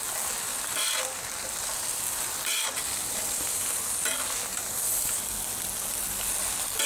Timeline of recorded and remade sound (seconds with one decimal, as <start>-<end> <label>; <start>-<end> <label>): 0.0-0.5 recorded; 0.5-3.8 remade; 3.8-4.5 recorded; 4.5-5.1 remade; 5.1-6.9 recorded